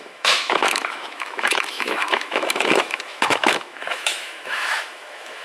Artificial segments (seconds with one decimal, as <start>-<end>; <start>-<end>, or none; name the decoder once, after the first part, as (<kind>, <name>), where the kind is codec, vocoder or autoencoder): 0.0-5.4 (autoencoder, DAC-VAE)